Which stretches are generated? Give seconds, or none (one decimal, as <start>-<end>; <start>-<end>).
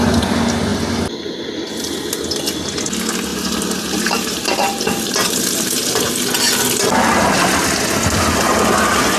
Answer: 3.3-6.1